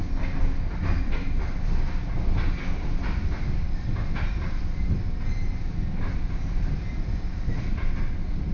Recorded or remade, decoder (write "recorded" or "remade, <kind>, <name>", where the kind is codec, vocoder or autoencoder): recorded